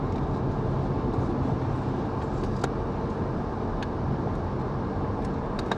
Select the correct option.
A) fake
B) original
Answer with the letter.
B